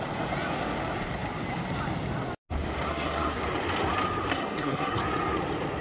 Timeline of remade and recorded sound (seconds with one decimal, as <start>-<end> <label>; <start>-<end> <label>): 0.0-2.9 recorded; 2.9-3.4 remade; 3.4-4.3 recorded; 4.3-5.0 remade; 5.0-5.8 recorded